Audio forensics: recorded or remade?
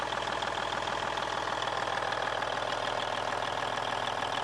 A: recorded